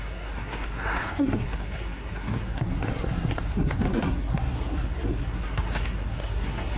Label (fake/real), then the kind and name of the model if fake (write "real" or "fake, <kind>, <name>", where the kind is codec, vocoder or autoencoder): fake, codec, SNAC